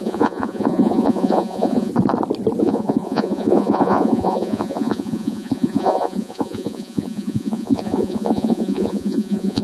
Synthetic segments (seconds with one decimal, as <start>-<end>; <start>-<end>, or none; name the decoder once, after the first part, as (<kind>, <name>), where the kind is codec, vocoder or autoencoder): 0.0-1.9 (vocoder, Vocos); 2.6-9.6